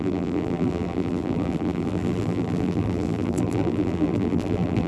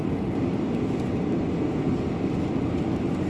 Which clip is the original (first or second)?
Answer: second